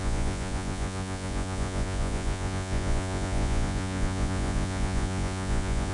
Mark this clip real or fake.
fake